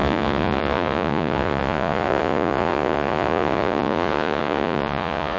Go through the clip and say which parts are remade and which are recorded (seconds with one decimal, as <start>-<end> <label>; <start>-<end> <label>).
0.0-5.4 remade